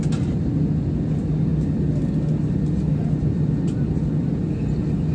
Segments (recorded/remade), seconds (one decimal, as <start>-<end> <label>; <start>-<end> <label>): 0.0-5.1 recorded